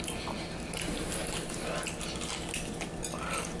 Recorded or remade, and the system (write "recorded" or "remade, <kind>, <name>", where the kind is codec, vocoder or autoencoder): recorded